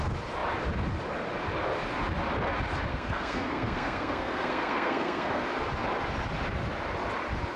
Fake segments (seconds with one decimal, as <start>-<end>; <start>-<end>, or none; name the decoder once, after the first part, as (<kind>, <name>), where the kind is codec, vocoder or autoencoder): 2.9-5.4 (codec, SNAC)